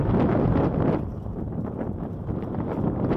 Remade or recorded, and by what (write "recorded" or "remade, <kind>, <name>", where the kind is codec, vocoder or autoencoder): recorded